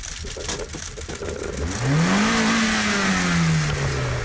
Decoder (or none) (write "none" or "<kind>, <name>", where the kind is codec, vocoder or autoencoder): none